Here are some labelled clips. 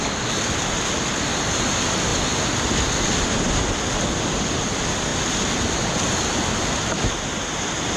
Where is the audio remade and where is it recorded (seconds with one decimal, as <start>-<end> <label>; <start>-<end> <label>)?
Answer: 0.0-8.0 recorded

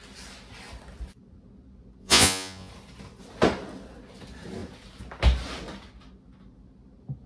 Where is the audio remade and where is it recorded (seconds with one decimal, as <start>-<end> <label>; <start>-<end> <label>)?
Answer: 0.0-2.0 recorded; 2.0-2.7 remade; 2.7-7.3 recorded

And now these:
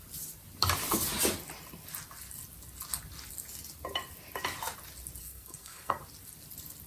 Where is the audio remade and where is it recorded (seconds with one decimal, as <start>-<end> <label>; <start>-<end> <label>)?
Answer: 0.0-5.2 recorded; 5.2-6.0 remade; 6.0-6.9 recorded

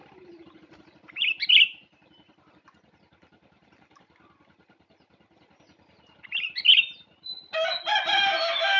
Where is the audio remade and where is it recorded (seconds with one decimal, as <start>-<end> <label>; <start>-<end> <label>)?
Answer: 0.0-8.8 recorded

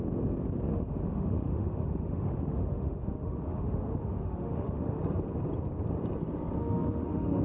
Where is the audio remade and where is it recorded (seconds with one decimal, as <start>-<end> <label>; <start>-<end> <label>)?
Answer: 0.0-0.7 recorded; 0.7-5.0 remade; 5.0-6.6 recorded; 6.6-7.4 remade